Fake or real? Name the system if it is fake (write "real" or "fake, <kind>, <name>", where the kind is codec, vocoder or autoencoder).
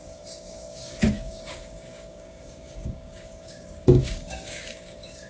fake, codec, DAC